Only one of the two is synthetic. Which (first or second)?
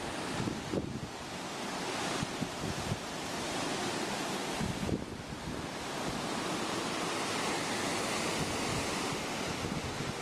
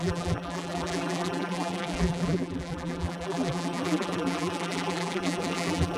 second